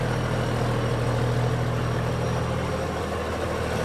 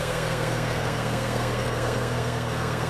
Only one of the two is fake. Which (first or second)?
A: second